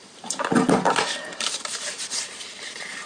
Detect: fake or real fake